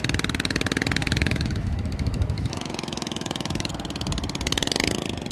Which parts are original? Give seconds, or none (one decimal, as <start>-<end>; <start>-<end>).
0.0-1.0; 3.7-5.3